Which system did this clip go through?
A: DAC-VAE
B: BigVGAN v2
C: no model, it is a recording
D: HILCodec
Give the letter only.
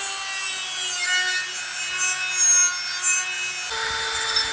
C